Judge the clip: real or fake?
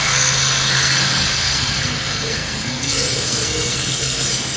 fake